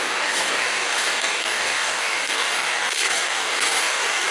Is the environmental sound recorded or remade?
remade